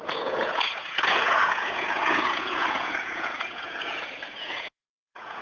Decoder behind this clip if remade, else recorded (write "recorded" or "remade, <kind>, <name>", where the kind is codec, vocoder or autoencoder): remade, vocoder, Vocos